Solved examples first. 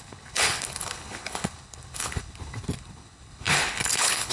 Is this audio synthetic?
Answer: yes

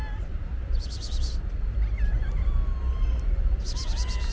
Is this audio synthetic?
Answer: no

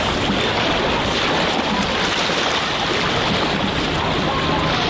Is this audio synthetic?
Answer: no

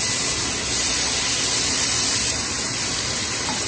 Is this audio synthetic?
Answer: no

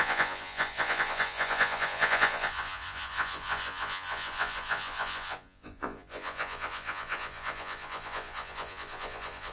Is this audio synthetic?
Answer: yes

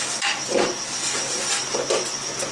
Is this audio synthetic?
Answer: no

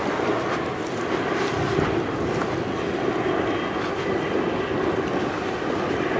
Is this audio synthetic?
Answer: no